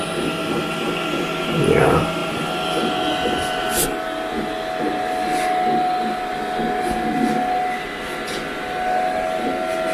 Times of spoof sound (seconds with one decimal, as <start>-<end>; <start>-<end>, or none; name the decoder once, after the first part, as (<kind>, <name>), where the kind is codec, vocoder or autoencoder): none